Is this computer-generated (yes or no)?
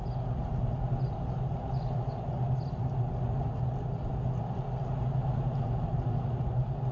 no